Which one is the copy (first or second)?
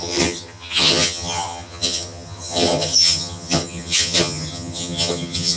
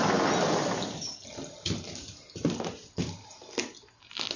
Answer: first